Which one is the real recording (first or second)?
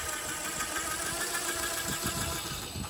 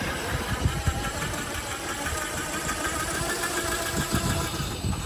first